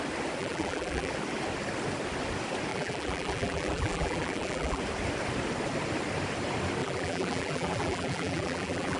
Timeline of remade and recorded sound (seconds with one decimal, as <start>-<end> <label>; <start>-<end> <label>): 0.0-0.4 recorded; 0.4-1.1 remade; 1.1-2.7 recorded; 2.7-4.8 remade; 4.8-6.8 recorded; 6.8-9.0 remade